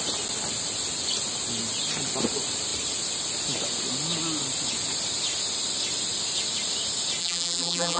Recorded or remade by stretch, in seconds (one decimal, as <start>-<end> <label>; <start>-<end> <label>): 0.0-7.2 recorded; 7.2-8.0 remade